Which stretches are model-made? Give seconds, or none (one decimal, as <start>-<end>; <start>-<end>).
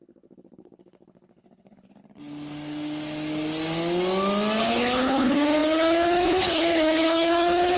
0.0-2.0; 4.6-7.8